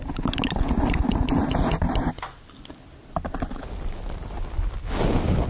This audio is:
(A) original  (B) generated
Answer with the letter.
A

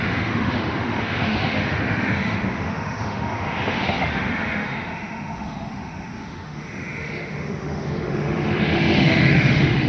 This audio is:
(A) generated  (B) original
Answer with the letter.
A